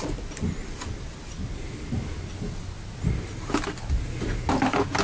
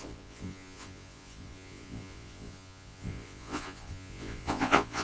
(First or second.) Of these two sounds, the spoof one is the second